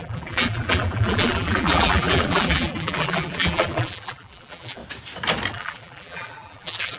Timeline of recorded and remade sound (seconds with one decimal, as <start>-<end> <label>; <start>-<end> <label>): 0.0-4.8 remade; 4.8-5.5 recorded; 5.5-7.0 remade